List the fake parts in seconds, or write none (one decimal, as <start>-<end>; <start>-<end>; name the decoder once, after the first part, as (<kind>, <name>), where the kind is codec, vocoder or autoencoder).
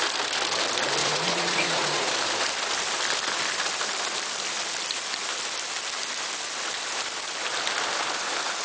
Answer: 1.0-2.1 (vocoder, Vocos)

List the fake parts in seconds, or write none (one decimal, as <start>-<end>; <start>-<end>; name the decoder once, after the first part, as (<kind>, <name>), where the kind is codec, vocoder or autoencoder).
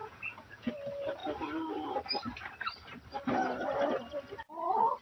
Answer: 0.0-0.7 (vocoder, Vocos)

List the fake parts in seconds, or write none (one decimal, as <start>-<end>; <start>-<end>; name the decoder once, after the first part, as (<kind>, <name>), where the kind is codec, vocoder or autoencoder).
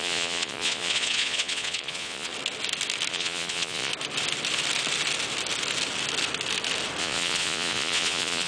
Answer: 0.0-2.3 (vocoder, Vocos); 3.1-3.9; 7.0-8.5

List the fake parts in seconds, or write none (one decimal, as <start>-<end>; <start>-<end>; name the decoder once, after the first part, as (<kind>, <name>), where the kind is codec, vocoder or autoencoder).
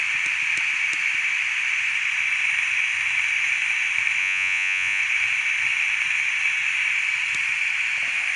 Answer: 4.2-5.0 (vocoder, Vocos)